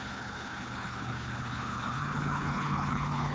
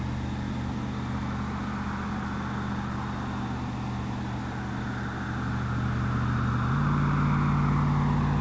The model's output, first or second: first